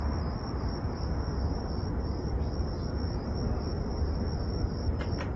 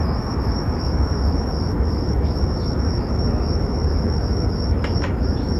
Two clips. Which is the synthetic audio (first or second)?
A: second